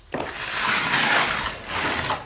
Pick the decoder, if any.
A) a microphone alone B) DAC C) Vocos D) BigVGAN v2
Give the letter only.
A